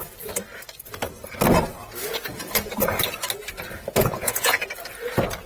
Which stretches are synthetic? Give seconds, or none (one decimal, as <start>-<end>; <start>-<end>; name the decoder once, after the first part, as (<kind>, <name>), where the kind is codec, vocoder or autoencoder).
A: 4.0-4.6 (vocoder, Vocos)